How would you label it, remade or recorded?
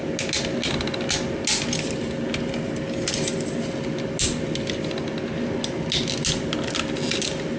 recorded